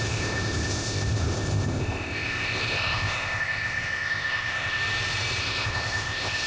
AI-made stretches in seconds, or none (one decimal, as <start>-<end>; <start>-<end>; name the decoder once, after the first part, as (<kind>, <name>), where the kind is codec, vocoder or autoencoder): 0.0-4.8 (codec, ZipCodec); 5.4-6.5